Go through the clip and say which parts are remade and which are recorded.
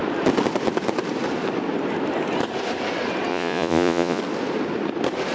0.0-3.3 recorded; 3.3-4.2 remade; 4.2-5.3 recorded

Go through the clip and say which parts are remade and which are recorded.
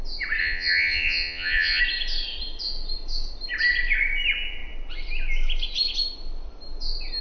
0.0-0.4 recorded; 0.4-1.8 remade; 1.8-7.2 recorded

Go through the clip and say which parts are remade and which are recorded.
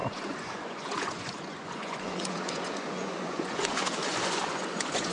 0.0-5.1 remade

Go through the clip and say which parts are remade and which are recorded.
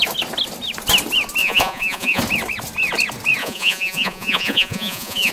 0.0-1.4 recorded; 1.4-2.2 remade; 2.2-3.4 recorded; 3.4-5.3 remade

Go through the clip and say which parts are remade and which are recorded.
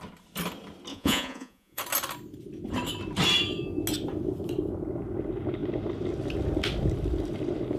0.0-0.9 recorded; 0.9-1.8 remade; 1.8-7.8 recorded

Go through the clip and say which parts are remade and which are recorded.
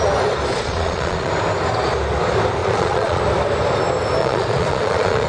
0.0-0.5 recorded; 0.5-1.3 remade; 1.3-2.6 recorded; 2.6-3.2 remade; 3.2-4.2 recorded; 4.2-5.3 remade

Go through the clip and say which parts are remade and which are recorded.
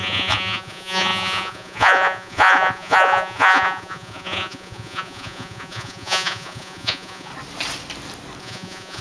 0.0-7.3 remade; 7.3-8.4 recorded; 8.4-9.0 remade